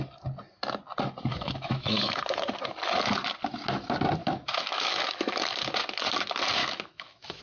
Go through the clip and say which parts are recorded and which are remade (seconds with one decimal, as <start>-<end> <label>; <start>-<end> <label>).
0.0-1.3 recorded; 1.3-2.2 remade; 2.2-4.2 recorded; 4.2-5.5 remade; 5.5-6.6 recorded; 6.6-7.4 remade